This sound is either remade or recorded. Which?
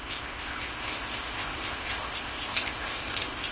remade